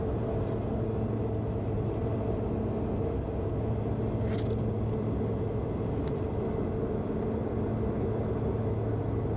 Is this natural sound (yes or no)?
yes